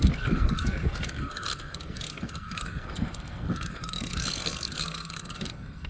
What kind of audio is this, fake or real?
fake